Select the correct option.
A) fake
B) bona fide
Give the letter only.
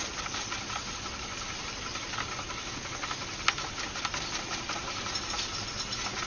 B